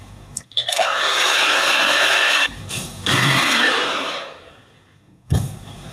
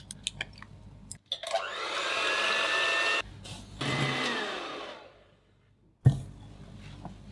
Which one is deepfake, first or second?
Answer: first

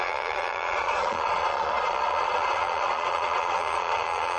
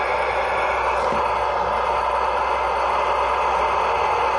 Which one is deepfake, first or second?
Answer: first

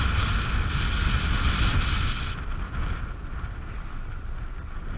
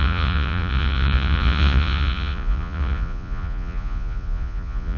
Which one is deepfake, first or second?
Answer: second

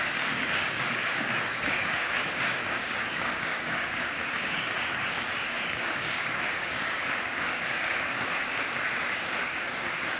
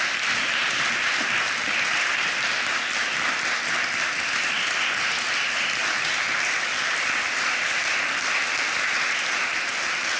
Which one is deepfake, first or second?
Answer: first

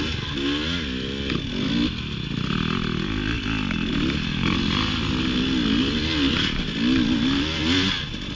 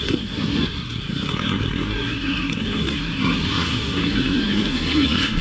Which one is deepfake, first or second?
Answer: second